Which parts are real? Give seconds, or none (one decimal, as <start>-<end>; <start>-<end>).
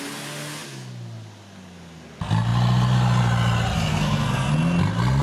0.0-3.9; 4.5-5.2